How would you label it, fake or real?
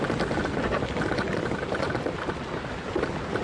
real